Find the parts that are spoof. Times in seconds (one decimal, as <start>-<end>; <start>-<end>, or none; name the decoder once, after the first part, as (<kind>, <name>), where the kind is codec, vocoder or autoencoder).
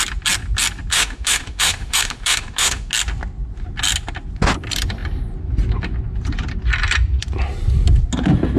0.9-2.9 (autoencoder, DAC-VAE)